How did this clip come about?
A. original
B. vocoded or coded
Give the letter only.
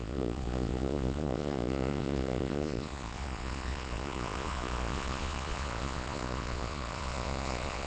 B